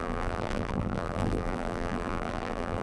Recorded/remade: remade